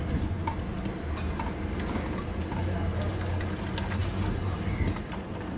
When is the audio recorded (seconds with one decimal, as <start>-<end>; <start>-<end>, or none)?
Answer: 0.0-2.6; 3.2-4.0